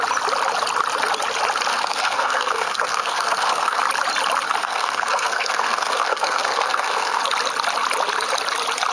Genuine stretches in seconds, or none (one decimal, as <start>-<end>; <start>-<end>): 0.0-1.7; 3.8-4.6; 7.2-8.9